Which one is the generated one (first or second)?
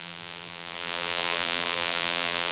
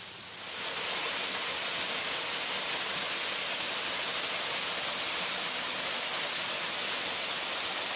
first